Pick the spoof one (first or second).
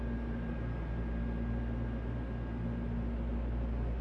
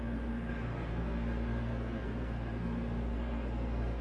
second